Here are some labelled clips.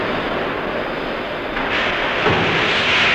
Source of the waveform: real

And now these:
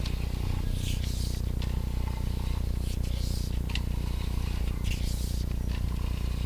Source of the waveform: real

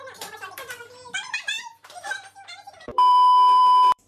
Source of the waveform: fake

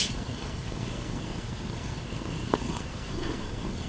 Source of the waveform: fake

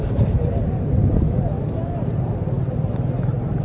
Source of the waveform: real